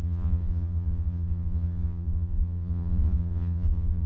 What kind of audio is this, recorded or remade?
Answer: remade